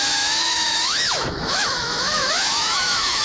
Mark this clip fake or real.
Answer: fake